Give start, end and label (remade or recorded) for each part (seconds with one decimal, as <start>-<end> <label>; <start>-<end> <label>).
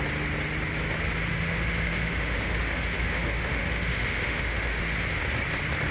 0.0-1.3 recorded; 1.3-4.8 remade; 4.8-5.9 recorded